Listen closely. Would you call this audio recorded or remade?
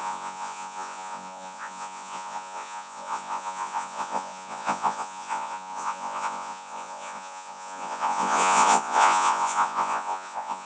remade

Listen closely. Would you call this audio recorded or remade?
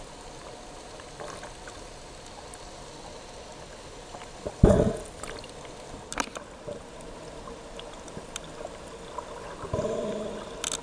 recorded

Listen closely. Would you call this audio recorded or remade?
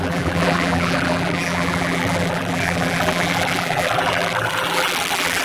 remade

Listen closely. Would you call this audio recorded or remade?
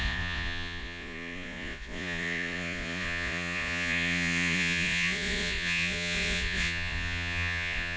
remade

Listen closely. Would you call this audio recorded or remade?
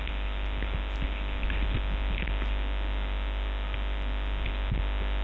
recorded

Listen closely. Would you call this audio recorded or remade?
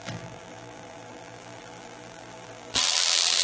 remade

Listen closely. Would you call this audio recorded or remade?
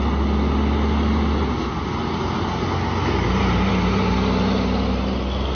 recorded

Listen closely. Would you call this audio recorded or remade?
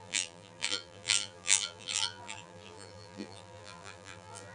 remade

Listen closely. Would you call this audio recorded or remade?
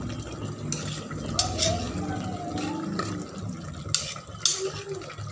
recorded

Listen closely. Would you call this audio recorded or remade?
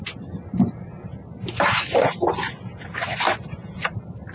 recorded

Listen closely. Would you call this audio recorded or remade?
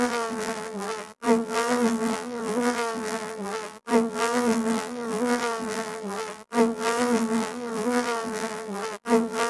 remade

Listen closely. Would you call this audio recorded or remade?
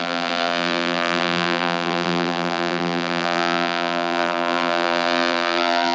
remade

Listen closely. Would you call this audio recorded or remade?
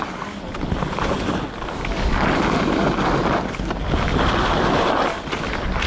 recorded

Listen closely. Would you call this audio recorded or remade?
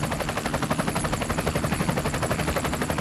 recorded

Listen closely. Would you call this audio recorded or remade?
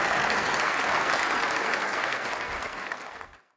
remade